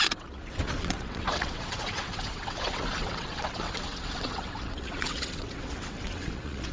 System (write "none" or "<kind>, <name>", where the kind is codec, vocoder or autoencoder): vocoder, WaveNeXt